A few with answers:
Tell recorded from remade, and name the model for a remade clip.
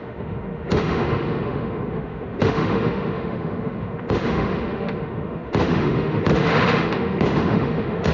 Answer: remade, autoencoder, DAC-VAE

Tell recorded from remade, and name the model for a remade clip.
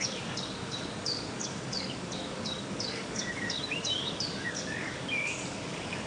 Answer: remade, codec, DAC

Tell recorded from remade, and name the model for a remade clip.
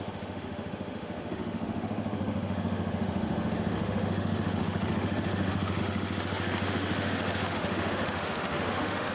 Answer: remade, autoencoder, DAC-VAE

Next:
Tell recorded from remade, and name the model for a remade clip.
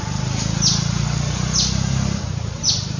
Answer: recorded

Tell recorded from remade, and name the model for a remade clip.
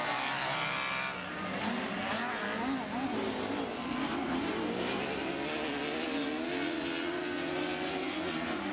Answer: recorded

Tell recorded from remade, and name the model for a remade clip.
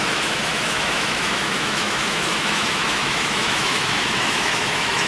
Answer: remade, autoencoder, DAC-VAE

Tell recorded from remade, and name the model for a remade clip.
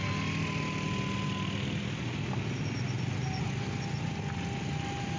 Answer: recorded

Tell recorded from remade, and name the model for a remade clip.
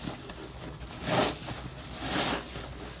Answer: recorded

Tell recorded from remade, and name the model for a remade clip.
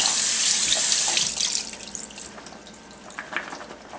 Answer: recorded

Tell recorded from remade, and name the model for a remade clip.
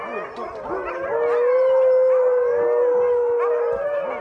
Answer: recorded